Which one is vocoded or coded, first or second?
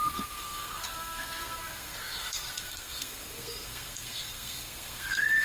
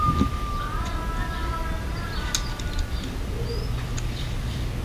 first